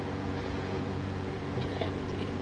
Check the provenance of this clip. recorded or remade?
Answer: remade